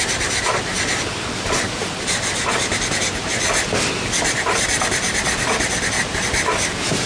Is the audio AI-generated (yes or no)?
no